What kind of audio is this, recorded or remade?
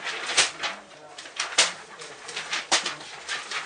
recorded